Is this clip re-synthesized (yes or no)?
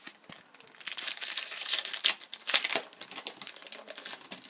no